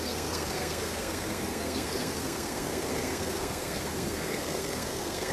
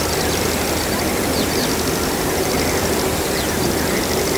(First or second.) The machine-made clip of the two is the first